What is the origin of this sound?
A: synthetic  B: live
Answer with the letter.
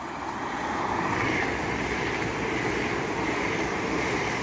B